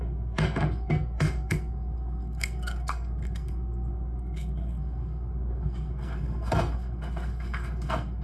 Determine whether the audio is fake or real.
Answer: fake